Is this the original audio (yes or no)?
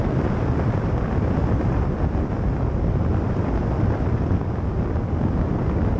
yes